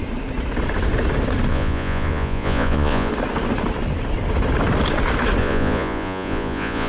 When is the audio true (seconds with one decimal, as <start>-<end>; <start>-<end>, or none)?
0.0-1.5; 3.1-5.4